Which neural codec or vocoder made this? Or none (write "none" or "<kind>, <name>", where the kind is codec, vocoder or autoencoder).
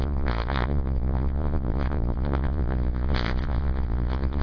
vocoder, Vocos